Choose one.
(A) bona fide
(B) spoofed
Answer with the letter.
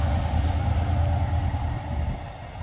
A